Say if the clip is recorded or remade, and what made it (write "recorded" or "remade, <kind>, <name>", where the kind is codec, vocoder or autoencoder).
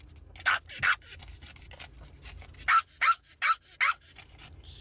recorded